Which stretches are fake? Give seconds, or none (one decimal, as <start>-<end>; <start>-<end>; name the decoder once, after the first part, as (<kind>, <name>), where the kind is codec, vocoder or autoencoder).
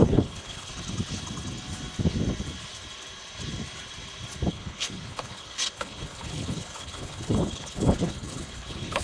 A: 0.0-0.7 (codec, HILCodec); 4.5-9.0